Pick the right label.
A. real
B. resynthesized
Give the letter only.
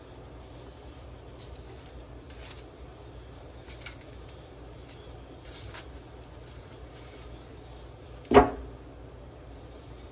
A